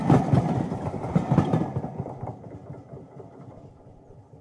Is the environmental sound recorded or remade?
remade